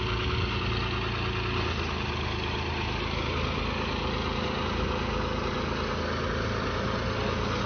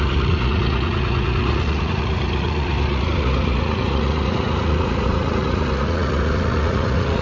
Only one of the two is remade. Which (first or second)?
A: second